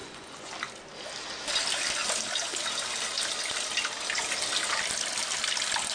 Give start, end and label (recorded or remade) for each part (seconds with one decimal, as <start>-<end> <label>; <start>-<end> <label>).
0.0-0.5 remade; 0.5-5.9 recorded